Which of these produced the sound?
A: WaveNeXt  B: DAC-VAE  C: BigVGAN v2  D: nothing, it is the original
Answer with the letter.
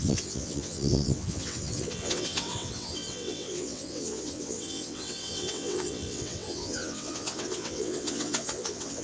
A